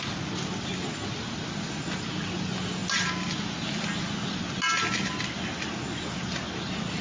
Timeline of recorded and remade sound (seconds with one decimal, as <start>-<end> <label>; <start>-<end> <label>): 0.0-7.0 recorded